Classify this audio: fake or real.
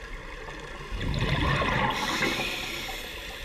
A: real